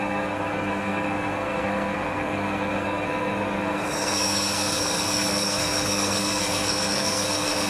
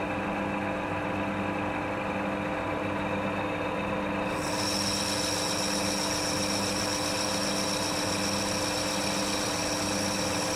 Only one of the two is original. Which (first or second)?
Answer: second